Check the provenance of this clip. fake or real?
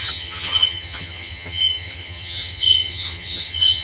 fake